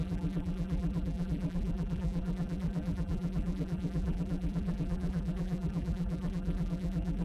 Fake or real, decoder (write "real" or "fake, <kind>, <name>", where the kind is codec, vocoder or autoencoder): fake, vocoder, BigVGAN v2